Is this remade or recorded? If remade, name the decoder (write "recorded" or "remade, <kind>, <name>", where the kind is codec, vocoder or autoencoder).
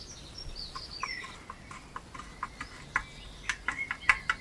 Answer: recorded